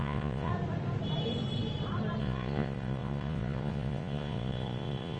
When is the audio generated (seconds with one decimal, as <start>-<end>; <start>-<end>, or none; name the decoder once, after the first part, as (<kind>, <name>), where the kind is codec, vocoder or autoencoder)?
0.0-0.5 (vocoder, Vocos); 2.2-5.2